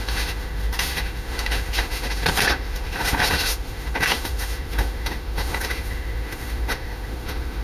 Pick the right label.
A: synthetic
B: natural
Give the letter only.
A